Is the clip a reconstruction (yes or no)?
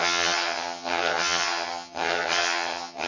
yes